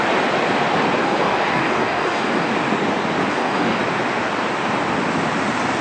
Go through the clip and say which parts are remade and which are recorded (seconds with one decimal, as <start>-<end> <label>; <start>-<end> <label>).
0.0-1.0 recorded; 1.0-2.5 remade; 2.5-3.3 recorded; 3.3-3.8 remade; 3.8-5.8 recorded